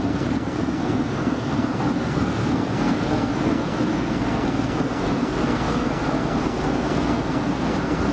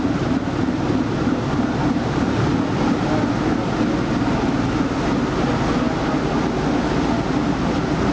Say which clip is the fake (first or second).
first